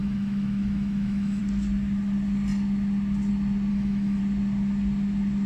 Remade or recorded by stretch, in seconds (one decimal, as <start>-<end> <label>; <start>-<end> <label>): 0.0-1.4 remade; 1.4-3.7 recorded; 3.7-4.2 remade; 4.2-5.5 recorded